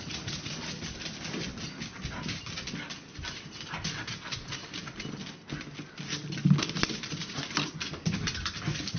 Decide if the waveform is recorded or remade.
recorded